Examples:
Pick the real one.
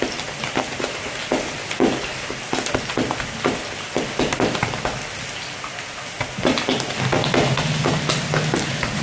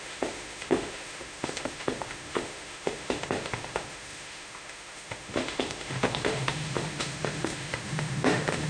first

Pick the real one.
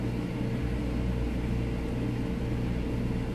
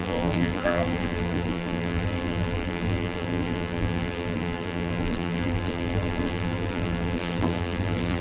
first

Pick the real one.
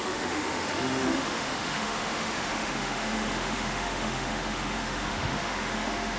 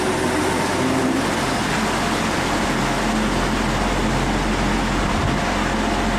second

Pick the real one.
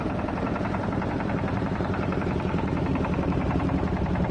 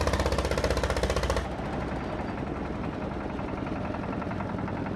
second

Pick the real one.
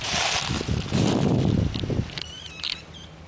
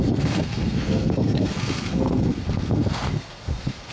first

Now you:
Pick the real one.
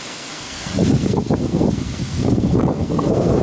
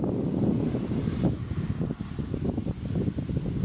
second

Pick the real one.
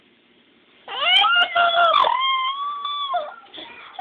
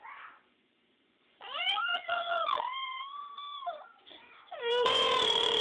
first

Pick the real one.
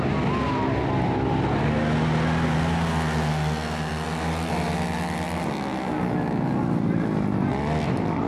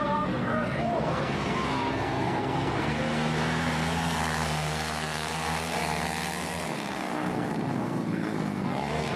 first